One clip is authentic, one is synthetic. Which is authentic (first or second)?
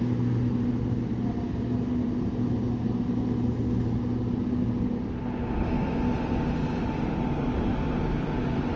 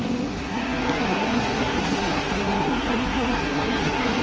first